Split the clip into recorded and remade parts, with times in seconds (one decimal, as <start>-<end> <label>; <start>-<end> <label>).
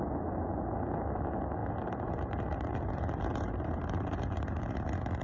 0.0-1.6 recorded; 1.6-4.7 remade; 4.7-5.2 recorded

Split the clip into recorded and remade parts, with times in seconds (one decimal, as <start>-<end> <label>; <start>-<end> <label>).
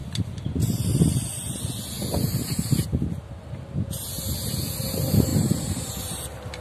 0.0-5.3 recorded; 5.3-5.9 remade; 5.9-6.6 recorded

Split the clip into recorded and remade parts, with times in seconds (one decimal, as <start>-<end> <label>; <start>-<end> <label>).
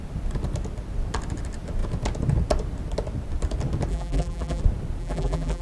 0.0-3.9 recorded; 3.9-4.6 remade; 4.6-5.0 recorded; 5.0-5.6 remade